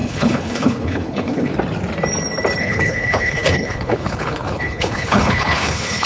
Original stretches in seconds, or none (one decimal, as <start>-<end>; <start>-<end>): 1.5-2.6